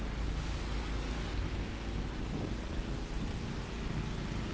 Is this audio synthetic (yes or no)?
no